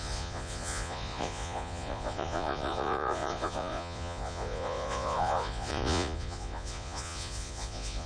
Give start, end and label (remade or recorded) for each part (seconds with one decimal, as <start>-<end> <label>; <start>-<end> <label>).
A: 0.0-8.1 remade